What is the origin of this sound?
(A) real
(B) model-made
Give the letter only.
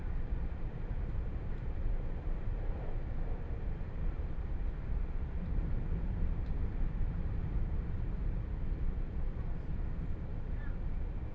B